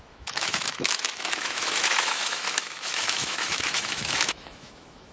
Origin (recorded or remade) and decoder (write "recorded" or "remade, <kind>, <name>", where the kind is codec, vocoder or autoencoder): remade, autoencoder, DAC-VAE